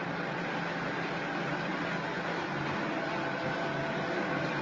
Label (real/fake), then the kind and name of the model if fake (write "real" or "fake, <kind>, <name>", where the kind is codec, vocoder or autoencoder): real